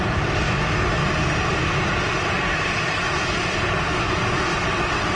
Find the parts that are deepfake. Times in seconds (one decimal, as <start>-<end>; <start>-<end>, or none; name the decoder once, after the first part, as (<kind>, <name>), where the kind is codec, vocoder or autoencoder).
4.5-5.2 (vocoder, WaveNeXt)

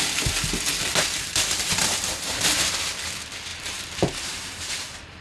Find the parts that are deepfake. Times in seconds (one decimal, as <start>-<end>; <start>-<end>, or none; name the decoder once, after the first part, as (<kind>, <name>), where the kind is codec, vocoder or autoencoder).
0.9-2.9 (vocoder, BigVGAN v2); 3.5-4.4

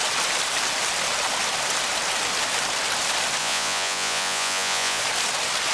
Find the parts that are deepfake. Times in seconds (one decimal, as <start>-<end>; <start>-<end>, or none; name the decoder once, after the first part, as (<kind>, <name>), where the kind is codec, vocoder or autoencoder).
3.4-5.0 (vocoder, Vocos)

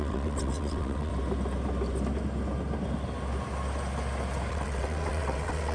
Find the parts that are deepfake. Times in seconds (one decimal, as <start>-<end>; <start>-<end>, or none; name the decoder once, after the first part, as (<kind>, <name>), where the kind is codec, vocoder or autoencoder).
0.0-1.1 (vocoder, WaveNeXt); 4.5-5.7

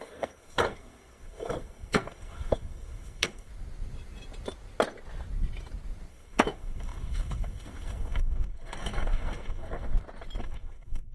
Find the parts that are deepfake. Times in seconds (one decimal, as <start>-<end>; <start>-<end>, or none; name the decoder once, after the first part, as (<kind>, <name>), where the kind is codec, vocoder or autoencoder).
0.0-3.5 (codec, SNAC); 6.1-9.9; 10.4-11.1